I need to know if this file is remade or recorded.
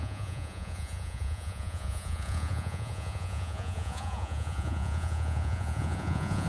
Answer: remade